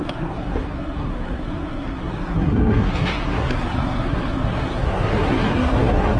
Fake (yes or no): yes